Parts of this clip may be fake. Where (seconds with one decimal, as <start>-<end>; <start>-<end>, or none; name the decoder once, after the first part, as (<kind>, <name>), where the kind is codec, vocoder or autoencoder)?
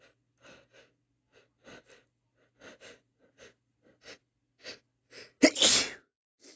none